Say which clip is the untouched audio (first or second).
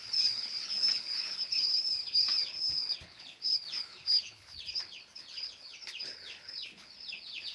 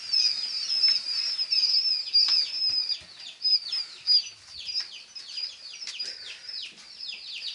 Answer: second